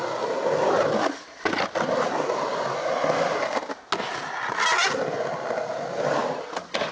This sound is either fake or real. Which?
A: real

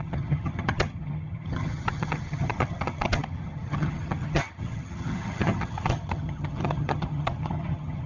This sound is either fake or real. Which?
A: fake